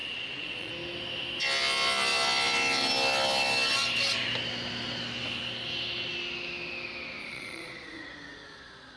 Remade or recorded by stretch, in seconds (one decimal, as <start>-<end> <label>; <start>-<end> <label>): 0.0-0.7 remade; 0.7-7.2 recorded; 7.2-9.0 remade